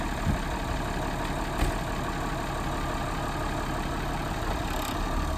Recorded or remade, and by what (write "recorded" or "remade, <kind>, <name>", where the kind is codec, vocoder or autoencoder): recorded